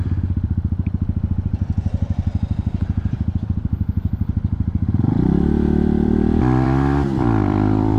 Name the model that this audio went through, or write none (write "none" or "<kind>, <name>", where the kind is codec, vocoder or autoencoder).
vocoder, BigVGAN v2